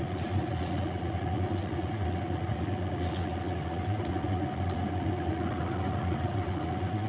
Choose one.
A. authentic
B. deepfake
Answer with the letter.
B